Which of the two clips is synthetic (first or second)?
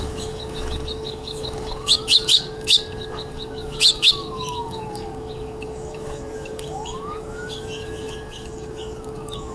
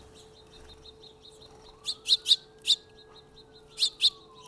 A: first